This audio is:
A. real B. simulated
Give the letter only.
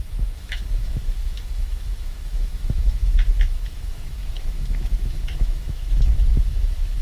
B